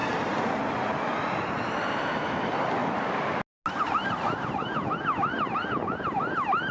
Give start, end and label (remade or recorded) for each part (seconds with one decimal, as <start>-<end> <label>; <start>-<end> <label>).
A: 0.0-6.7 recorded